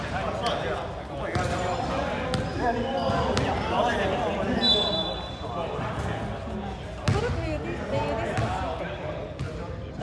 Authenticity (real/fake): real